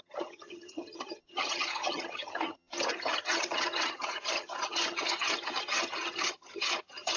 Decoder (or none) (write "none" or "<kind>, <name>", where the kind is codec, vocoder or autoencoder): vocoder, HiFi-GAN